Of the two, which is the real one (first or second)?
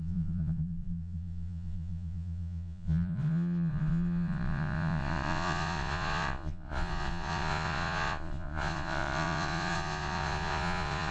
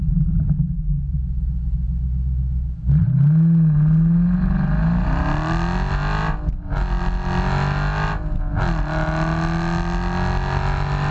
second